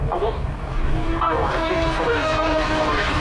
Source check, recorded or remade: remade